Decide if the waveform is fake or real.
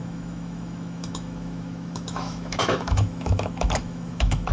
fake